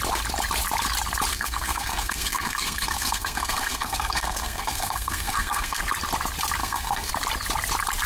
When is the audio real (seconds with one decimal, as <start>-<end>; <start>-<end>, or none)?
0.0-1.3; 5.8-6.6; 7.1-8.1